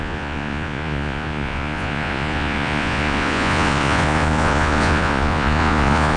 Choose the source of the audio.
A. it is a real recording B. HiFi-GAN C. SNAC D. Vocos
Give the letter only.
D